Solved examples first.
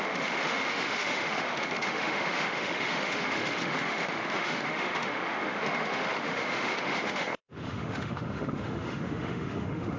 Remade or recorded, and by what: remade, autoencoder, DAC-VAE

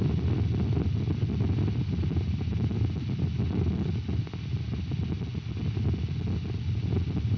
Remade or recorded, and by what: recorded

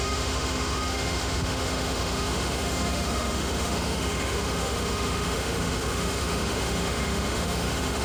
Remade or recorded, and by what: remade, autoencoder, DAC-VAE